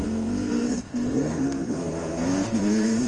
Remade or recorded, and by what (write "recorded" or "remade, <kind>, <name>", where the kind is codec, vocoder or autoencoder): remade, codec, SNAC